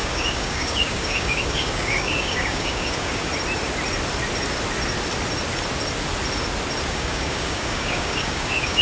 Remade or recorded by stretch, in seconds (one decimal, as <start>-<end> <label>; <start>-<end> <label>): 0.0-3.3 remade; 3.3-6.9 recorded; 6.9-8.8 remade